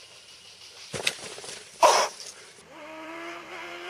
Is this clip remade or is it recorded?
remade